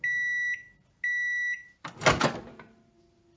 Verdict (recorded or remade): recorded